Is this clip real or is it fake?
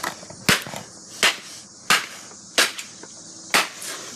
real